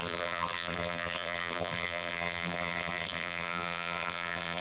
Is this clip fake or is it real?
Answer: fake